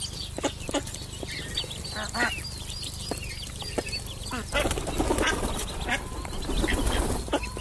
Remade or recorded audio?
recorded